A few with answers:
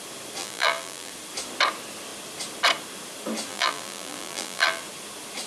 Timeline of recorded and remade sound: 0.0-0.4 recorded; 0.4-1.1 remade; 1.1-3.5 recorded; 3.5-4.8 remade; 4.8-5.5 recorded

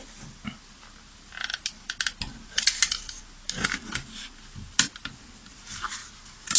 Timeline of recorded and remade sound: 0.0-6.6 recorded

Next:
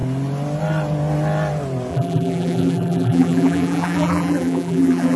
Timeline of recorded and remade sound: 0.0-1.9 recorded; 1.9-5.2 remade

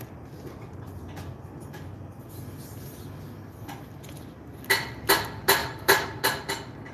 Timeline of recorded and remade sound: 0.0-5.6 recorded; 5.6-6.2 remade; 6.2-6.9 recorded

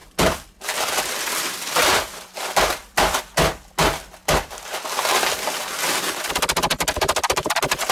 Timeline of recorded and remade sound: 0.0-3.2 remade; 3.2-4.2 recorded; 4.2-6.3 remade; 6.3-7.9 recorded

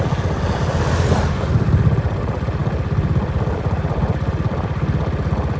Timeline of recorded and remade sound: 0.0-5.6 recorded